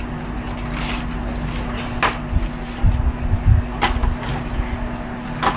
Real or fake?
real